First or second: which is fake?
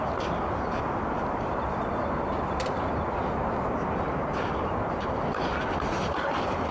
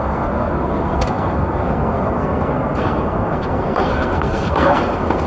second